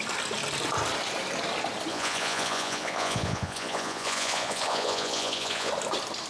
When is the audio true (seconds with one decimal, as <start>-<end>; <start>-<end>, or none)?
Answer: 0.0-1.9; 5.7-6.3